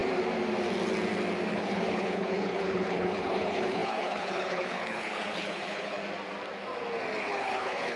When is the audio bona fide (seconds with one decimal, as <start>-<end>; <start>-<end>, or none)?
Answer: 0.0-1.5; 6.0-7.2